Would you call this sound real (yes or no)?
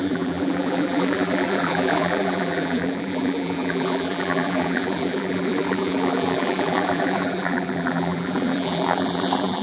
no